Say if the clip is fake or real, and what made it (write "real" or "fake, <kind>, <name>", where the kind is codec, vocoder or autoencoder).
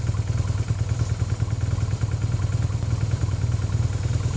real